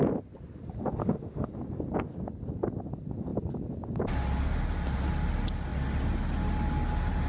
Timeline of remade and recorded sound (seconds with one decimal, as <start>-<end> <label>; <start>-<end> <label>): 0.0-1.0 recorded; 1.0-1.5 remade; 1.5-7.3 recorded